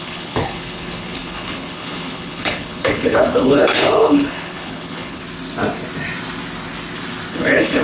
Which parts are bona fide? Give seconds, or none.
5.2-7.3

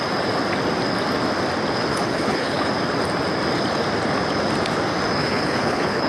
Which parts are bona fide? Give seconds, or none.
0.0-1.9; 2.7-5.2

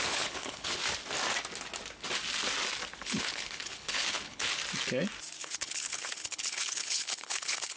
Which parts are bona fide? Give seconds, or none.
0.8-3.0; 4.6-5.4

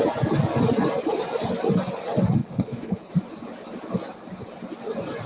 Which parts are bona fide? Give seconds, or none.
0.0-2.4; 3.1-5.3

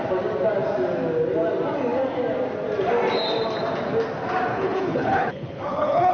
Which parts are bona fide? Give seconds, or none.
0.0-4.5

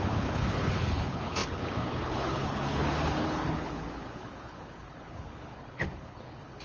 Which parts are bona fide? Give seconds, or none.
none

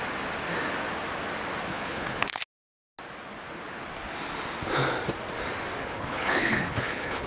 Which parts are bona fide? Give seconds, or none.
0.0-1.7; 2.4-5.8

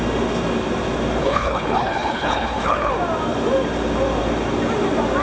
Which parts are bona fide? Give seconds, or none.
0.0-1.2; 2.9-5.2